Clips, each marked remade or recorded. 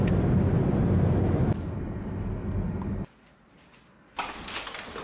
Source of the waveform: recorded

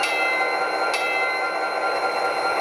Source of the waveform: recorded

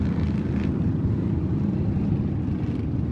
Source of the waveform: recorded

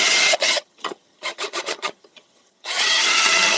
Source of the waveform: remade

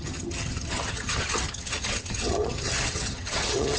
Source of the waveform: remade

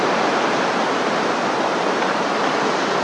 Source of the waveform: recorded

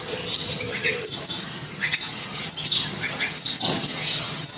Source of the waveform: remade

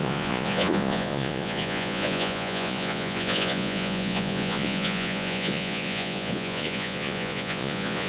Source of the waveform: remade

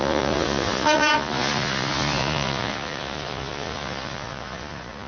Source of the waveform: remade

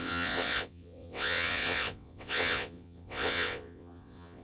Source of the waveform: remade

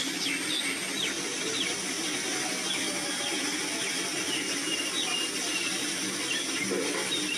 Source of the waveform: recorded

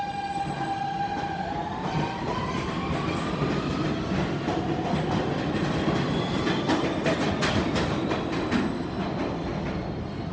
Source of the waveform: recorded